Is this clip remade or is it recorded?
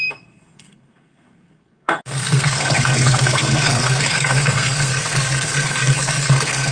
remade